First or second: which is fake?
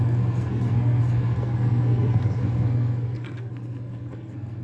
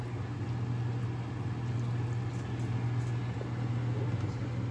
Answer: first